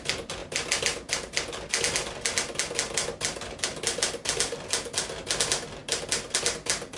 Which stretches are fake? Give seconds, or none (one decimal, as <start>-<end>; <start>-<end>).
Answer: none